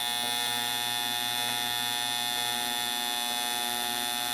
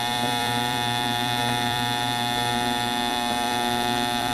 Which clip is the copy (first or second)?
second